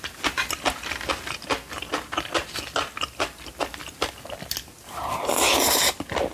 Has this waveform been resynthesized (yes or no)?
no